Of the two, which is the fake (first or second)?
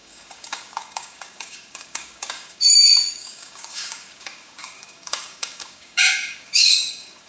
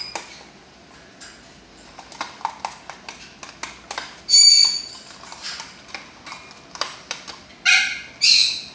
first